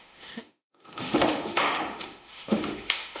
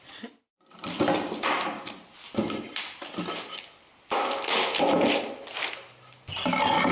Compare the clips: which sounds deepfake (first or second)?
first